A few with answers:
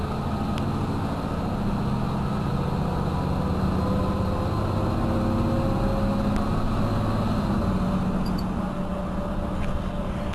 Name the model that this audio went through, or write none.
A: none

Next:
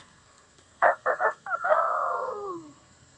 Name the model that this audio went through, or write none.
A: codec, SNAC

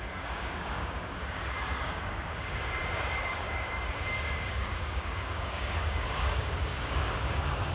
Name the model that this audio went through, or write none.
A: codec, DAC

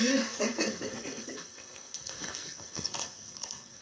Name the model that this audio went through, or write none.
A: codec, SNAC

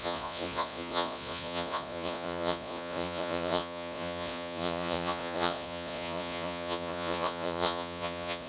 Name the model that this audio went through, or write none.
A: vocoder, Vocos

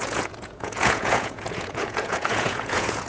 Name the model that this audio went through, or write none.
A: vocoder, Vocos